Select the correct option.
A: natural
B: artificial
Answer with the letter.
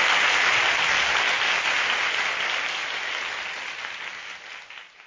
A